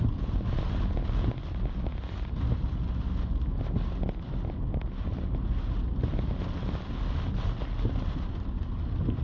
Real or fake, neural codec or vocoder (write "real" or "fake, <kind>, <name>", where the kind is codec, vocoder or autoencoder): real